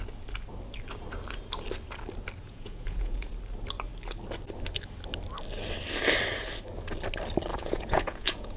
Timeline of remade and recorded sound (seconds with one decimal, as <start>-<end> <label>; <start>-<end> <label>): 0.0-2.4 recorded; 2.4-3.3 remade; 3.3-7.5 recorded; 7.5-8.6 remade